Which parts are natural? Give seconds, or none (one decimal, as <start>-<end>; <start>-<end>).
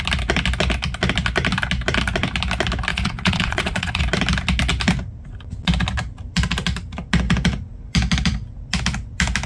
0.0-2.9; 4.0-9.5